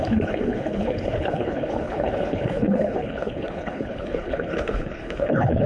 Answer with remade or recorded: remade